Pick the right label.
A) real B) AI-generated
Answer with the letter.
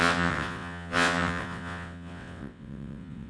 B